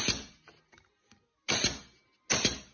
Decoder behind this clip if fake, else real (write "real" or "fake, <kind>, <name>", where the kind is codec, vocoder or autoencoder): real